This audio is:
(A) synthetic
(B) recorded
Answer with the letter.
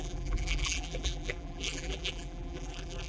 A